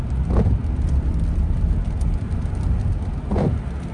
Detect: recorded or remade recorded